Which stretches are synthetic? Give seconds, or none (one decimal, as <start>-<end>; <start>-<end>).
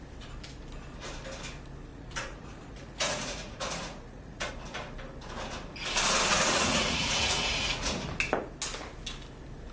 1.9-4.5; 6.3-8.0